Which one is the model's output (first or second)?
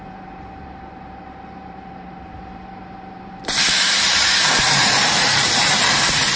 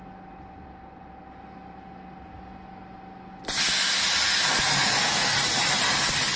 first